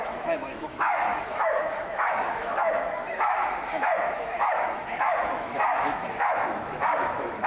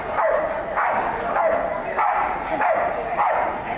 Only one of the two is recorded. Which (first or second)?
second